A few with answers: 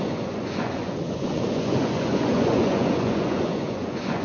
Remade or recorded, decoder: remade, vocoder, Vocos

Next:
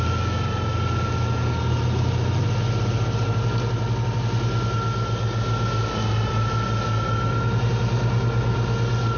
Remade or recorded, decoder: recorded